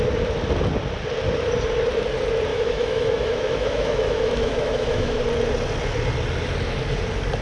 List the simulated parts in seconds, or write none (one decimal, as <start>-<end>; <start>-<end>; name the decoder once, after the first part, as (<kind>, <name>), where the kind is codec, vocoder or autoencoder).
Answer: 2.5-5.2 (autoencoder, DAC-VAE)